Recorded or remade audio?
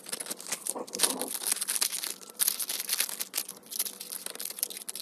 recorded